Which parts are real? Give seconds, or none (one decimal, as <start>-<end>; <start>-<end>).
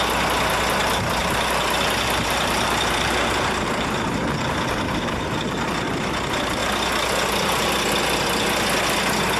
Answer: 0.0-1.2; 5.9-6.6; 8.0-9.4